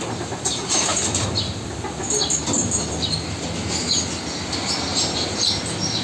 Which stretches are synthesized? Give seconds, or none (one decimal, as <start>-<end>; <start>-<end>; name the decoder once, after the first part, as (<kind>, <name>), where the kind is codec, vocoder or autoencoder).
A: 4.9-5.6 (vocoder, BigVGAN v2)